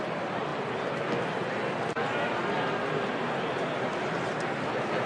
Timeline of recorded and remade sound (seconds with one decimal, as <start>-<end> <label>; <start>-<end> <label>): 0.0-5.1 recorded